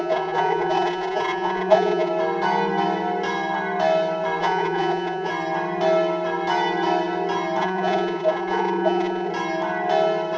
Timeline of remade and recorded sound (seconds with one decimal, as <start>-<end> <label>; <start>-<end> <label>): 0.0-2.1 remade; 2.1-4.4 recorded; 4.4-5.3 remade; 5.3-7.6 recorded; 7.6-9.3 remade; 9.3-10.4 recorded